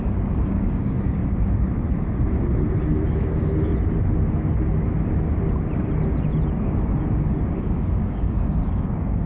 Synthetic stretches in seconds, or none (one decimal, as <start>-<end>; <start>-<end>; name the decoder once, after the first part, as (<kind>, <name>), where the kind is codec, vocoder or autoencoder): 0.0-1.2 (codec, DAC); 3.1-3.7; 7.6-9.3